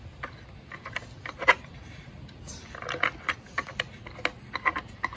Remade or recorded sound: recorded